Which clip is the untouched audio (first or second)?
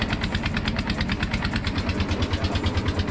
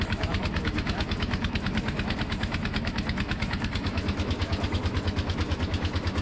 first